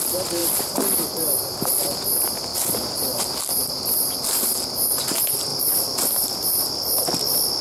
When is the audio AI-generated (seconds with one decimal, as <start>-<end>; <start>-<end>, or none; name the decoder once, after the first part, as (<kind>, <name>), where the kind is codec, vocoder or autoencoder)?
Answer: 0.4-1.1 (vocoder, BigVGAN v2); 5.5-6.4